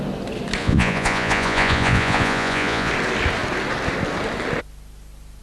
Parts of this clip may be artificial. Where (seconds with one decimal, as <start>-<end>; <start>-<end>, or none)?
0.6-2.9